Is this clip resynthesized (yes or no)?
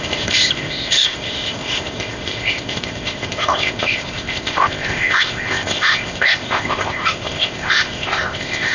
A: yes